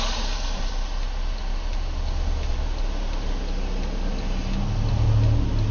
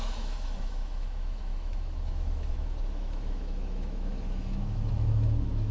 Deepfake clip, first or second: second